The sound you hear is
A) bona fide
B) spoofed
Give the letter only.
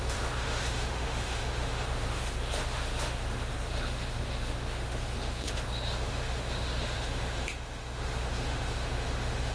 B